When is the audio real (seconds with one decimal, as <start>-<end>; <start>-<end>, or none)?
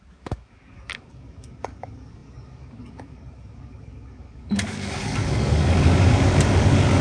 none